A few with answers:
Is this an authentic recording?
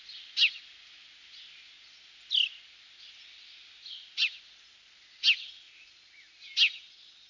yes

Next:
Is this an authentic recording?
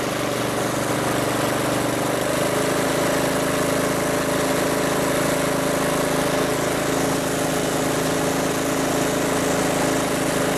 yes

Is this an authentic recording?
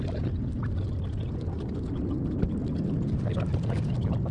yes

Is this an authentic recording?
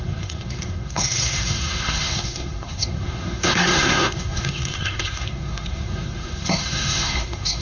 no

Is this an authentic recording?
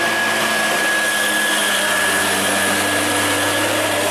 yes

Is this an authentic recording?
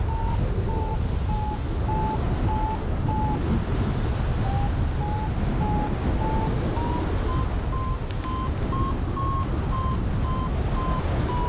yes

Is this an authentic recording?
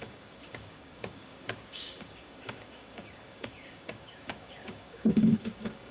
no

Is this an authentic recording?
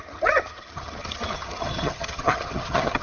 no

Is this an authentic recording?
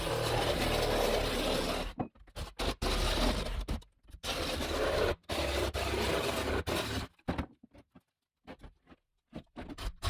yes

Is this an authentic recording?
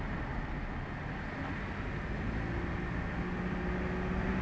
yes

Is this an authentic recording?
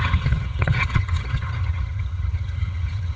no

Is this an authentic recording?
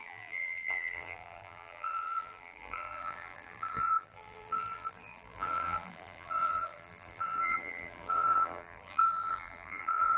no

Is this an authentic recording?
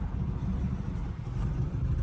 yes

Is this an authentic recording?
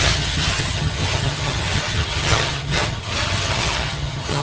no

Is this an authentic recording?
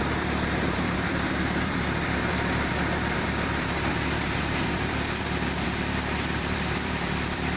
no